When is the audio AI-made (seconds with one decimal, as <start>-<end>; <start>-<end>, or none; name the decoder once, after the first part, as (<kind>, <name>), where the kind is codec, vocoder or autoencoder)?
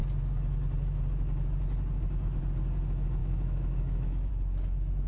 3.2-4.3 (autoencoder, DAC-VAE)